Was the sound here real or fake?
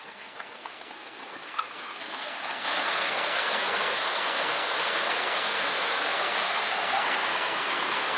fake